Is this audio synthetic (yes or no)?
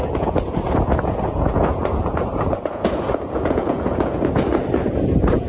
yes